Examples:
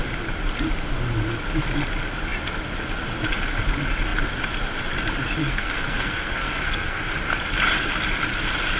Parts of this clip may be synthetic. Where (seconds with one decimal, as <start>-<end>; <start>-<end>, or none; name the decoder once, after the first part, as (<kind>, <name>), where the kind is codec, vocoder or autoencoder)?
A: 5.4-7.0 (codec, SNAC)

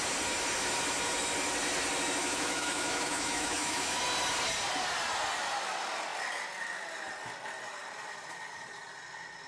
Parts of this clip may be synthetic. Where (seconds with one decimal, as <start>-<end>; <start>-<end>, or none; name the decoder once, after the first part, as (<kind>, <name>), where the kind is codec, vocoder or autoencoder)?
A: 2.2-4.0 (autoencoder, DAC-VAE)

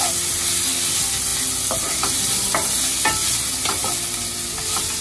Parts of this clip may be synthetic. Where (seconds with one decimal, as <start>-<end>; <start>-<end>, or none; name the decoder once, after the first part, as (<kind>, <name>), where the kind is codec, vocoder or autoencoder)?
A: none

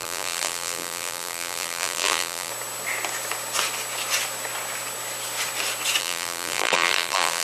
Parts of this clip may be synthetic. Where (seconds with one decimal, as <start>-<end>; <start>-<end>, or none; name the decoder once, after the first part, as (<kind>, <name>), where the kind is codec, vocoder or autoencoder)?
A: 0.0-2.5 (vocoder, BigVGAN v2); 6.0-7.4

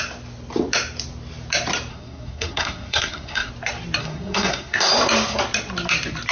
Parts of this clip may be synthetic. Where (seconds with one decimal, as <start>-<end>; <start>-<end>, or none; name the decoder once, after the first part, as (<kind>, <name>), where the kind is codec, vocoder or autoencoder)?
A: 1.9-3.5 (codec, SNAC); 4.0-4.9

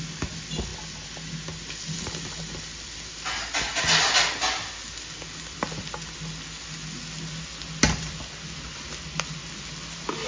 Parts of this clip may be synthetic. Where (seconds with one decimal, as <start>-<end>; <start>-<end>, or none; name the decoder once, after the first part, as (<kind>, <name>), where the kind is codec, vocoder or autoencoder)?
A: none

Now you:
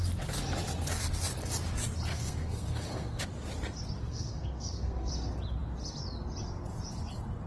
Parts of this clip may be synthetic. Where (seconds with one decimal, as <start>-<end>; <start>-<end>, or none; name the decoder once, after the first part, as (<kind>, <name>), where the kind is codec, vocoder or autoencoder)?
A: 2.1-3.2 (codec, SNAC); 4.0-5.1